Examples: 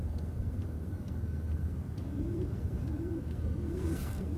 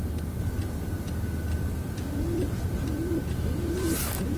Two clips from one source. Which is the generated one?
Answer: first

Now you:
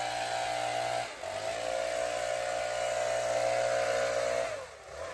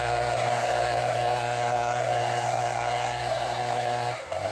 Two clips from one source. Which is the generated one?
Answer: second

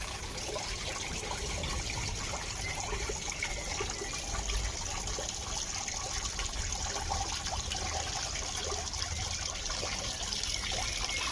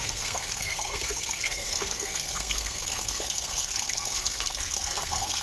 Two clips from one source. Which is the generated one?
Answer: second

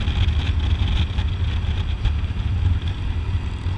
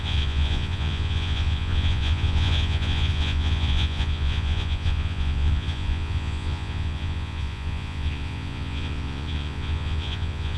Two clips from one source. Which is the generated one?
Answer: second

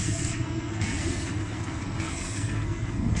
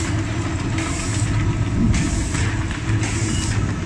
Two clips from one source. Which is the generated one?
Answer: first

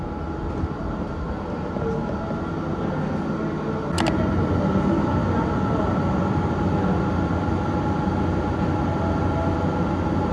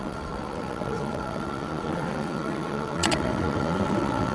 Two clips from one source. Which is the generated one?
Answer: second